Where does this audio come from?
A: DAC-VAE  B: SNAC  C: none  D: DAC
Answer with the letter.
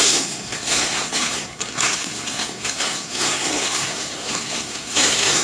B